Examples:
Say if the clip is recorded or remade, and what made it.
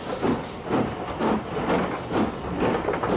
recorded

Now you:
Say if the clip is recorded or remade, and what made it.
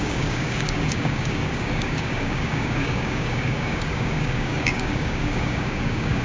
remade, codec, DAC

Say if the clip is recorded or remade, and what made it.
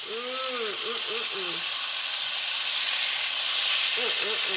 recorded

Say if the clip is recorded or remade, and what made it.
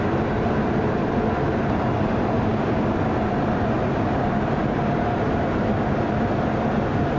recorded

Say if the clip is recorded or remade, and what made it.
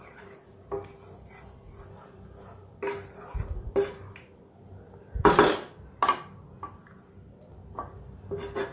recorded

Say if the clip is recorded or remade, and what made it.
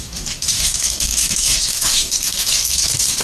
remade, codec, DAC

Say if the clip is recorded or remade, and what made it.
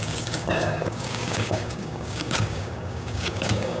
remade, codec, DAC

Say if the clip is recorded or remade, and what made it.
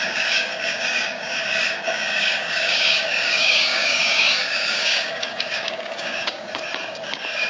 remade, codec, DAC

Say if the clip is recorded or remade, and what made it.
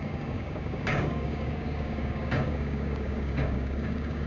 remade, codec, DAC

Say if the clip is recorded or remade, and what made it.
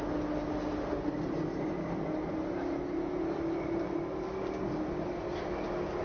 recorded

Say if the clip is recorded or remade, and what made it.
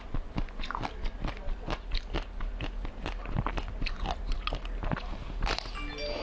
recorded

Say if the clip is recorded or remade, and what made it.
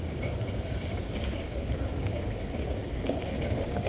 remade, codec, DAC